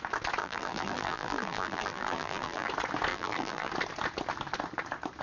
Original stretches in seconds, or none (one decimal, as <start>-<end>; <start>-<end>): 0.0-0.4; 2.7-3.1; 3.7-5.2